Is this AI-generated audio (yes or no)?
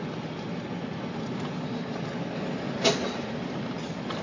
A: yes